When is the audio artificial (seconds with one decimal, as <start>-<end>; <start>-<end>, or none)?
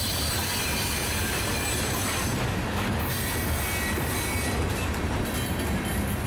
0.4-2.0; 4.6-5.3